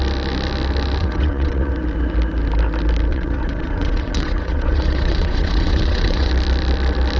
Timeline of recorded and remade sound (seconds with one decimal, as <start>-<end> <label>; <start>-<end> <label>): 0.0-1.0 recorded; 1.0-1.7 remade; 1.7-3.1 recorded; 3.1-6.3 remade; 6.3-7.2 recorded